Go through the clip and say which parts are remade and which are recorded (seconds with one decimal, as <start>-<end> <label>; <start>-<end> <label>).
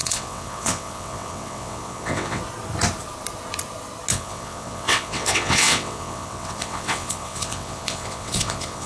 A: 0.0-2.4 remade; 2.4-4.1 recorded; 4.1-8.9 remade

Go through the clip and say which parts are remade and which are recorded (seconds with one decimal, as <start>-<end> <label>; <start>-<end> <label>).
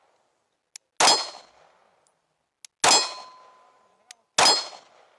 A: 0.0-5.2 recorded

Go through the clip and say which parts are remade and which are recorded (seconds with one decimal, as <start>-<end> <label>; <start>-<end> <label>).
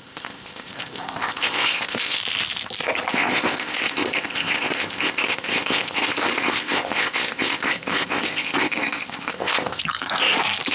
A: 0.0-2.2 remade; 2.2-3.1 recorded; 3.1-9.8 remade; 9.8-10.7 recorded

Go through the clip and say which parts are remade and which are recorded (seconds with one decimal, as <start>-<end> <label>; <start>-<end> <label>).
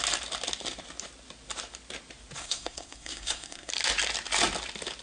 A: 0.0-2.4 recorded; 2.4-3.7 remade; 3.7-5.0 recorded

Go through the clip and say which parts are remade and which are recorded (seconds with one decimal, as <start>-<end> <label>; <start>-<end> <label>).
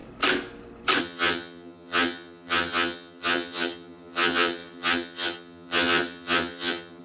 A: 0.0-1.0 recorded; 1.0-7.0 remade